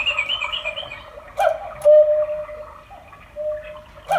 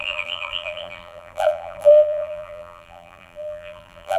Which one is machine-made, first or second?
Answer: second